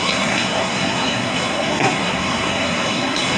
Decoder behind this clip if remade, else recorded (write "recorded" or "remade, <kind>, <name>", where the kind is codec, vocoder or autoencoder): remade, codec, SNAC